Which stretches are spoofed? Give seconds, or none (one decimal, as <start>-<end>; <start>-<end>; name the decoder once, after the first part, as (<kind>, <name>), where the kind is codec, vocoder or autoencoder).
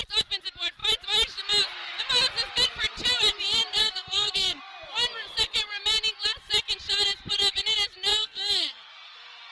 3.8-4.6 (codec, SNAC); 8.1-8.9